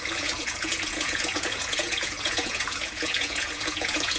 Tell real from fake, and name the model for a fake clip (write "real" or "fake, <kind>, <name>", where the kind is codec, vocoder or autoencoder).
fake, vocoder, Vocos